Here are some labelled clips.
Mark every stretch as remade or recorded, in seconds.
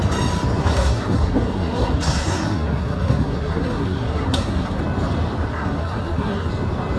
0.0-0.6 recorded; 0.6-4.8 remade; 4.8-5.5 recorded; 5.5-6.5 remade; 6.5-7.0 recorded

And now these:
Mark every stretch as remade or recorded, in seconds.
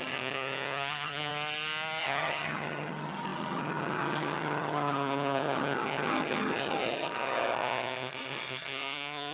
0.0-1.3 remade; 1.3-2.0 recorded; 2.0-9.3 remade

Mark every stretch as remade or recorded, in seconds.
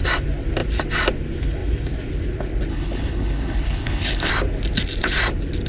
0.0-2.7 recorded; 2.7-4.3 remade; 4.3-5.7 recorded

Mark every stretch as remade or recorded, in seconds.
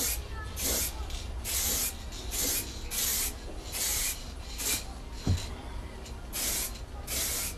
0.0-3.9 recorded; 3.9-4.4 remade; 4.4-5.7 recorded; 5.7-6.2 remade; 6.2-7.6 recorded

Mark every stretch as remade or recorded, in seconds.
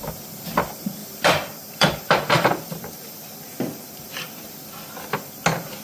0.0-1.0 recorded; 1.0-4.5 remade; 4.5-5.8 recorded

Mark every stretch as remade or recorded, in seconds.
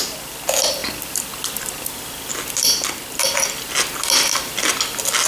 0.0-5.3 recorded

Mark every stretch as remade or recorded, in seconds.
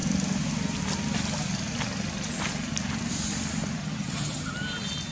0.0-3.8 recorded; 3.8-4.5 remade; 4.5-5.1 recorded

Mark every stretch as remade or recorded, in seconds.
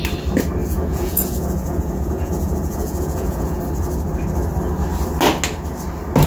0.0-0.6 recorded; 0.6-3.6 remade; 3.6-6.3 recorded